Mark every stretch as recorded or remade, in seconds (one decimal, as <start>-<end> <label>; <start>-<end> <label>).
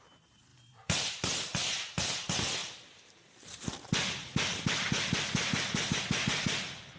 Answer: 0.0-0.5 recorded; 0.5-1.1 remade; 1.1-2.6 recorded; 2.6-6.0 remade; 6.0-7.0 recorded